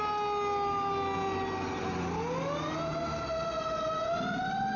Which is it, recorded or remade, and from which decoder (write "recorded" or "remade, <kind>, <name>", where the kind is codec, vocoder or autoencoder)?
recorded